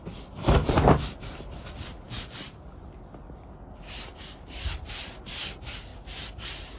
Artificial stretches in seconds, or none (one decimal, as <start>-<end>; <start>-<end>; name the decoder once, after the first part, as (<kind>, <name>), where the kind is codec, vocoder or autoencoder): none